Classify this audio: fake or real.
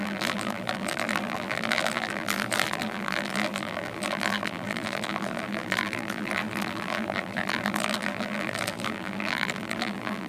fake